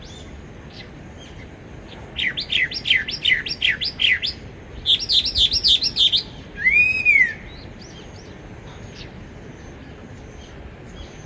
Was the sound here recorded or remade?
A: recorded